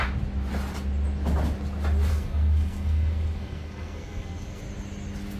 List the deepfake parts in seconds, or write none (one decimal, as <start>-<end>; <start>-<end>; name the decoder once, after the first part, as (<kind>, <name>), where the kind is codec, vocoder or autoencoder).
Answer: 2.1-4.6 (codec, SNAC)